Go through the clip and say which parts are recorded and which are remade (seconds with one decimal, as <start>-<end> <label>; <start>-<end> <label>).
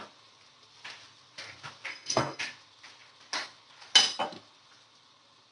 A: 0.0-1.9 recorded; 1.9-2.4 remade; 2.4-5.5 recorded